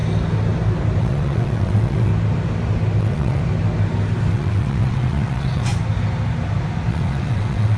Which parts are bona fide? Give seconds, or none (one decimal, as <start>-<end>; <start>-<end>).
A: 0.0-1.0; 2.1-3.0; 3.4-4.3; 5.7-6.9